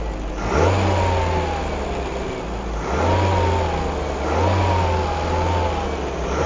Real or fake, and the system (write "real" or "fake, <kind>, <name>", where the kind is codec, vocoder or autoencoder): real